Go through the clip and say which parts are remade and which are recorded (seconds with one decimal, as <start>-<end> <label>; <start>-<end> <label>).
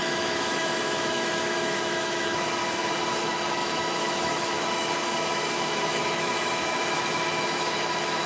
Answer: 0.0-2.6 remade; 2.6-3.1 recorded; 3.1-8.3 remade